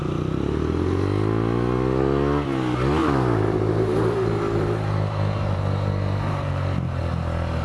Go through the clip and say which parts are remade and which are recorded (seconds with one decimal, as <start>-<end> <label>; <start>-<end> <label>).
0.0-3.0 recorded; 3.0-7.0 remade; 7.0-7.6 recorded